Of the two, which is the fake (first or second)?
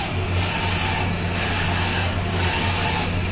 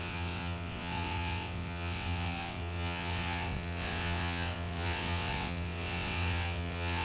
second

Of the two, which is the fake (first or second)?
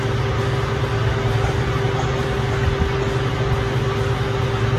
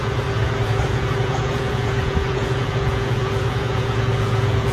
second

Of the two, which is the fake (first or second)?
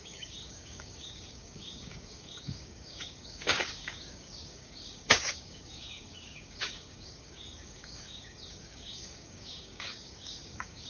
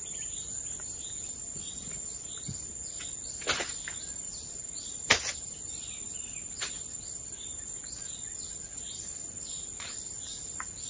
first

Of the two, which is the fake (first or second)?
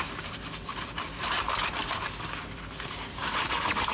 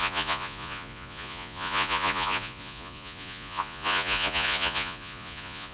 second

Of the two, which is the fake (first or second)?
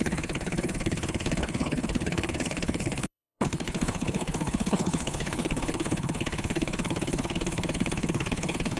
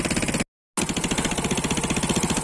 first